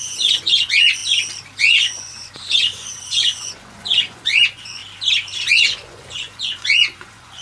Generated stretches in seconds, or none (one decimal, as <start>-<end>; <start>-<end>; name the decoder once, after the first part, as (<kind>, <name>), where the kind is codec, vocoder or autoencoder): 0.0-1.0 (vocoder, Vocos); 1.6-4.8; 5.5-7.4